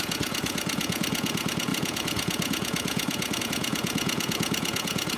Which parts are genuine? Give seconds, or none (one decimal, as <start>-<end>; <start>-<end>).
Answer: none